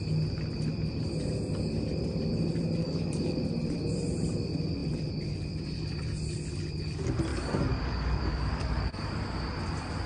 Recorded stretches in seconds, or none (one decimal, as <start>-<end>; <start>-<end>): 0.0-2.8; 3.4-7.3; 9.1-10.1